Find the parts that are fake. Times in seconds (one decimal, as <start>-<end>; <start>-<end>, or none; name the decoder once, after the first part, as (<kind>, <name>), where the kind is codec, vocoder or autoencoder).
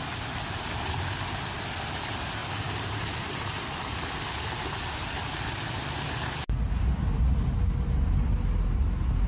2.4-3.8 (vocoder, BigVGAN v2)